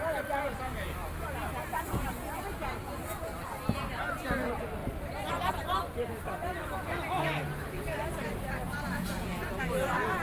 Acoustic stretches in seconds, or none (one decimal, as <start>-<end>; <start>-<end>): 0.0-10.2

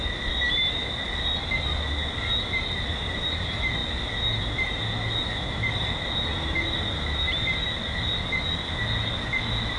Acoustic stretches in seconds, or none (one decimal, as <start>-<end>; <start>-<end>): 0.0-9.8

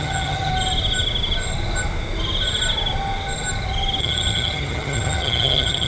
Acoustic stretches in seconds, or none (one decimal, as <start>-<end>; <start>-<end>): 0.5-4.0

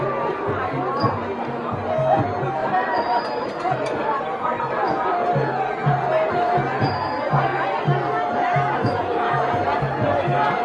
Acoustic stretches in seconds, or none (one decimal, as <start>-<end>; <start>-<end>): 0.0-2.6; 4.6-10.6

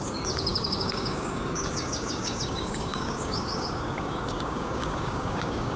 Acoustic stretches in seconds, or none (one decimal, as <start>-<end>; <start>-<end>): none